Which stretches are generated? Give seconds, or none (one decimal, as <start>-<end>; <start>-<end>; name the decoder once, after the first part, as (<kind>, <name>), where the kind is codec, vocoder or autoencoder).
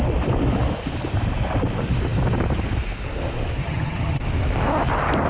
3.6-4.2 (vocoder, HiFi-GAN)